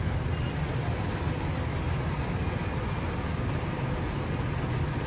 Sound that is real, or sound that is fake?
real